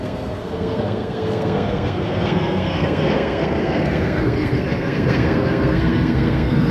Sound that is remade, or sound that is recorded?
remade